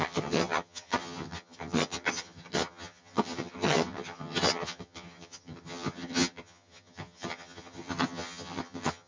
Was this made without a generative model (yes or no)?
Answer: no